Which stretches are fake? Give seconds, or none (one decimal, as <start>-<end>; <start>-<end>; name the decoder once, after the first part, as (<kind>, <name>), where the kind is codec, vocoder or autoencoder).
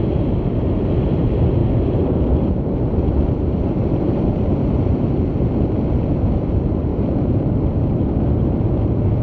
1.6-5.3 (vocoder, BigVGAN v2); 6.9-7.5